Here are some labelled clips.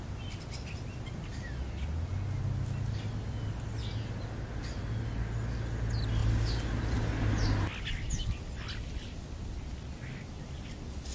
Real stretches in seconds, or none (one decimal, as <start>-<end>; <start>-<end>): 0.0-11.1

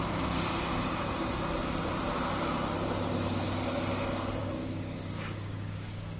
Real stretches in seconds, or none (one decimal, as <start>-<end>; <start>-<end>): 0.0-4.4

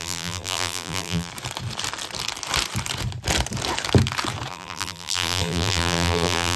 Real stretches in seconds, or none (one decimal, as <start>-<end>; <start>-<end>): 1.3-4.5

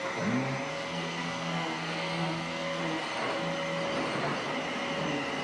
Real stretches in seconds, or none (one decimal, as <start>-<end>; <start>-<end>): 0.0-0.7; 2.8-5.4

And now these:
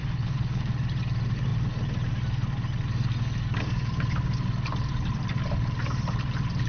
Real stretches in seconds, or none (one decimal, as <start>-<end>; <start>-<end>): 0.6-6.7

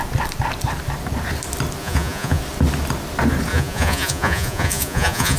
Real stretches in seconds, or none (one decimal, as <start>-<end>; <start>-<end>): 0.0-1.8; 2.4-3.5

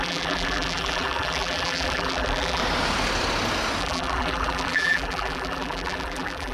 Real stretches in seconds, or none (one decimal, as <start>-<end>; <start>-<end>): 2.6-3.8